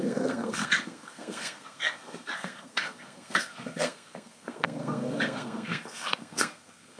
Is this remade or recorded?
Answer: remade